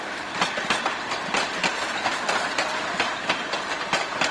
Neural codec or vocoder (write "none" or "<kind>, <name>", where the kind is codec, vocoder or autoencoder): vocoder, BigVGAN v2